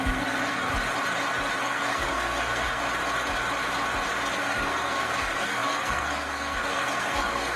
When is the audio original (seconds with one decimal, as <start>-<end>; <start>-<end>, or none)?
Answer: 0.7-1.6; 2.8-4.3